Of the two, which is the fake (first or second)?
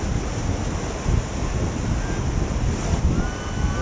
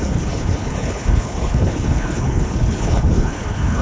second